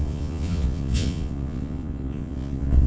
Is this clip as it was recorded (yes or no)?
no